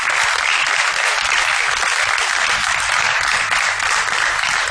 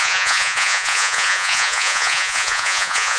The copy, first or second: second